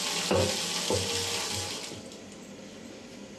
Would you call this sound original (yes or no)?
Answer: yes